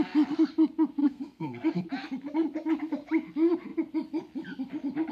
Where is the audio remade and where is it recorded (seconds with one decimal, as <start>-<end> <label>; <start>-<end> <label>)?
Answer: 0.0-1.0 recorded; 1.0-1.8 remade; 1.8-5.1 recorded